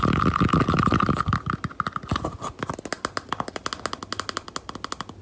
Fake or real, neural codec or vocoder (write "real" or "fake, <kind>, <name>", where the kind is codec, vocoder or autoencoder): real